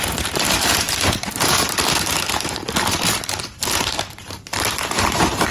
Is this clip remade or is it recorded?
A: remade